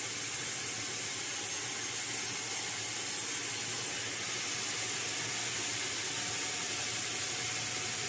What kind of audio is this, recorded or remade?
recorded